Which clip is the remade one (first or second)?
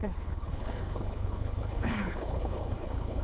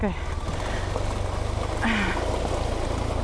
first